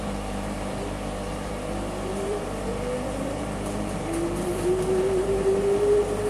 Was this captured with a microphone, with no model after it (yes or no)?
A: no